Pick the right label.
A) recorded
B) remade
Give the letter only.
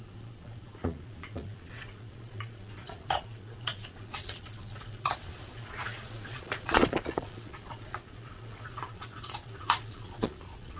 B